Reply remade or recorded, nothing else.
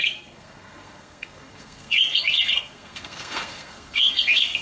remade